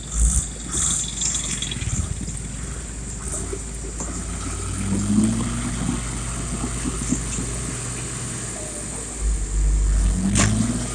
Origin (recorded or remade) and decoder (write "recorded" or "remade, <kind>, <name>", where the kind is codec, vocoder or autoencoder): recorded